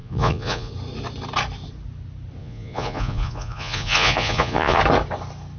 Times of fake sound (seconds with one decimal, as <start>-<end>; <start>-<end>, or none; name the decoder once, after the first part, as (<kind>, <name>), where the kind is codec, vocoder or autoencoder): 0.0-0.7 (vocoder, Vocos); 2.4-4.8